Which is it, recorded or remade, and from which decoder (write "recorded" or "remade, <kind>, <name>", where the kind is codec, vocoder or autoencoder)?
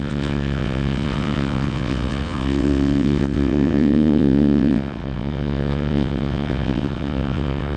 remade, vocoder, WaveNeXt